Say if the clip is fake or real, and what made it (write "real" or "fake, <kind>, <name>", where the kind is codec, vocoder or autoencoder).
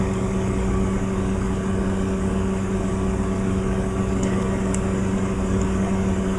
fake, codec, DAC